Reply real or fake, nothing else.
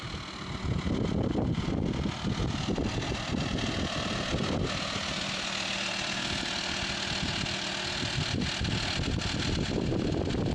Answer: real